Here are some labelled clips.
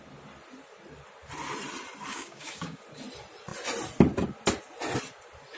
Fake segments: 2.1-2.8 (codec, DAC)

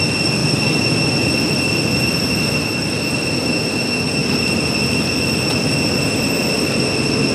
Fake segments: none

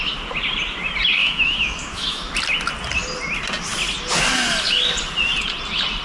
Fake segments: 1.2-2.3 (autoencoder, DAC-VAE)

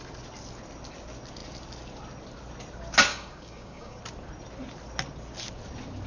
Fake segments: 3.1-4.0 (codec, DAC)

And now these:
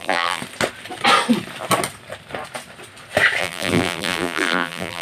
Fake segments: 0.0-0.4 (vocoder, BigVGAN v2); 3.4-5.0

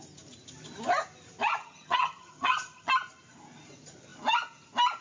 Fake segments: 1.6-2.9 (vocoder, HiFi-GAN)

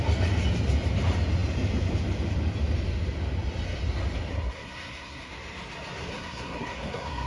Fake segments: 4.3-5.3 (codec, SNAC); 6.1-7.3